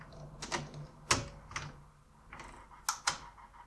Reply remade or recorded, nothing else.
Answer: recorded